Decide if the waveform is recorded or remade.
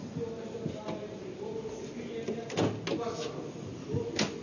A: recorded